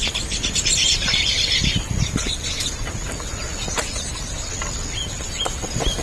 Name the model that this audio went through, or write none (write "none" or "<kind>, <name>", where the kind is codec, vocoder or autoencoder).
none